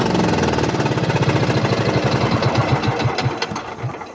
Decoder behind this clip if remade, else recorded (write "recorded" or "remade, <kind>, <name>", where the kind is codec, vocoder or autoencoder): recorded